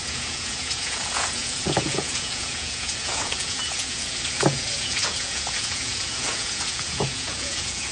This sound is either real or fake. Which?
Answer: fake